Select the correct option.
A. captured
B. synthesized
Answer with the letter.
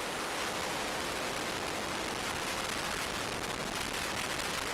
A